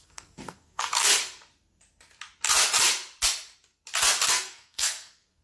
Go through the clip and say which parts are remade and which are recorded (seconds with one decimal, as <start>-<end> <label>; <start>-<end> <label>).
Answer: 0.0-1.1 remade; 1.1-4.3 recorded; 4.3-5.4 remade